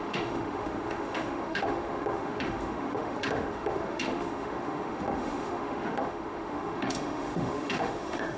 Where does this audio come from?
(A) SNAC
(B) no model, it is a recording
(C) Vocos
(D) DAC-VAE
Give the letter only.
D